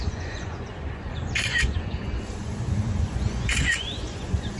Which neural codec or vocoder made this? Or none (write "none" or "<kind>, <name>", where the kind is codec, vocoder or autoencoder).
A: vocoder, Vocos